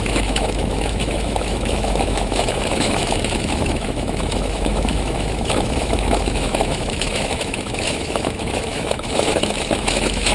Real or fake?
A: fake